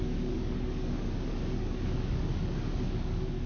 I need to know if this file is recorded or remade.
remade